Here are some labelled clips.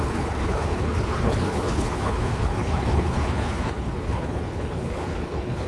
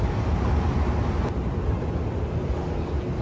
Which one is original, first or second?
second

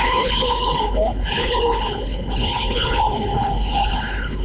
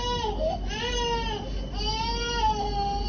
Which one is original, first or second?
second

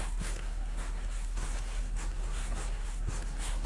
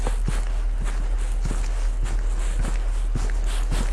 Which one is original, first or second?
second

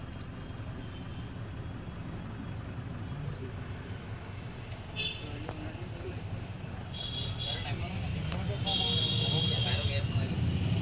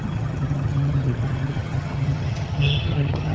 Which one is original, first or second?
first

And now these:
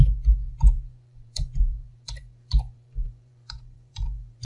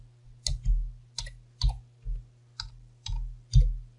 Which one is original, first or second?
second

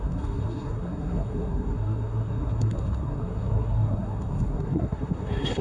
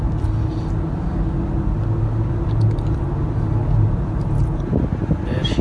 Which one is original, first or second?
second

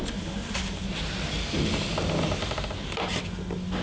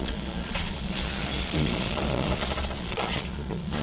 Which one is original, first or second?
first